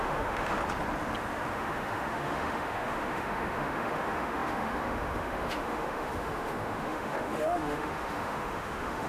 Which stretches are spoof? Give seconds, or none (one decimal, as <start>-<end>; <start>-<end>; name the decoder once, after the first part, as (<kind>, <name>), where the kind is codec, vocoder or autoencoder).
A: 0.0-0.6 (autoencoder, DAC-VAE); 1.5-9.1

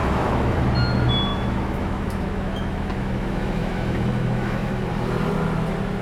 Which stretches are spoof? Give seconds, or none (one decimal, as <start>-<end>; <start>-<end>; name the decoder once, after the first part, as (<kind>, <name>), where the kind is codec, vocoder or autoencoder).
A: 0.0-0.6 (autoencoder, DAC-VAE); 1.3-4.9

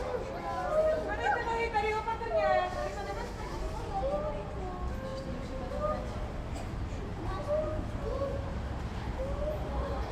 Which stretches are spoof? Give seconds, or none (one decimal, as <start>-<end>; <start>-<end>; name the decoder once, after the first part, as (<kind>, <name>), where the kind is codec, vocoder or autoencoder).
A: 2.8-3.6 (autoencoder, DAC-VAE)

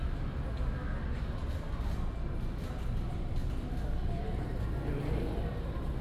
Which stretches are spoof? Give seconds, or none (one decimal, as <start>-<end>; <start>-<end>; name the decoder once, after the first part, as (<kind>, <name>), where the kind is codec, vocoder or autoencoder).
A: none